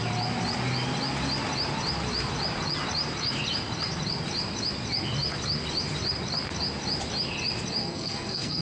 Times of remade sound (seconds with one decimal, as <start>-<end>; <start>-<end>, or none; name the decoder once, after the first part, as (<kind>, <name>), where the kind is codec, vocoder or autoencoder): 7.8-8.6 (codec, SNAC)